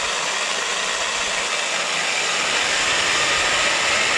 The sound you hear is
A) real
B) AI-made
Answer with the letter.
A